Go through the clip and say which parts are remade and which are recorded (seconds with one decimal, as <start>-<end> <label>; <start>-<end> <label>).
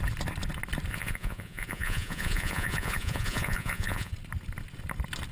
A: 0.0-0.9 recorded; 0.9-4.1 remade; 4.1-5.3 recorded